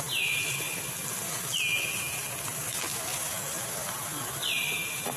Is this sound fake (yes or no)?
no